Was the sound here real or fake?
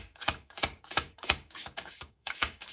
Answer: fake